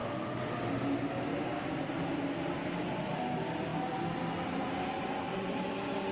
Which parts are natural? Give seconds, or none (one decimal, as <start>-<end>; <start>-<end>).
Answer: 0.0-6.1